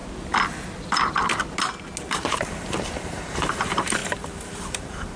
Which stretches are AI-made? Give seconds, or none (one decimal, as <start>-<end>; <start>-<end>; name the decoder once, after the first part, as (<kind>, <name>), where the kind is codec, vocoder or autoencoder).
2.1-5.2 (vocoder, BigVGAN v2)